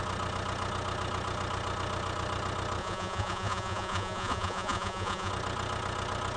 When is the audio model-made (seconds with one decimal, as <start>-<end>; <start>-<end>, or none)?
2.8-5.3